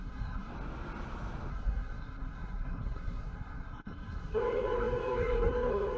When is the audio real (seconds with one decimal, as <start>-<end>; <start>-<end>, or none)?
0.5-1.5